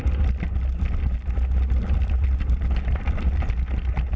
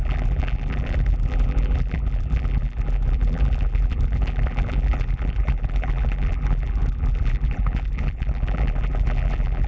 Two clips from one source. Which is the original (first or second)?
first